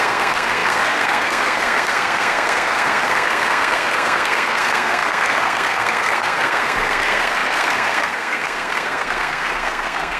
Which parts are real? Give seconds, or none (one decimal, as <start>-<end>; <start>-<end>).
none